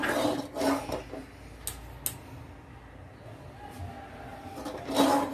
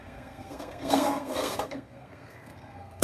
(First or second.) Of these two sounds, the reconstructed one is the second